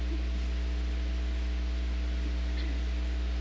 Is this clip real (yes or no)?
yes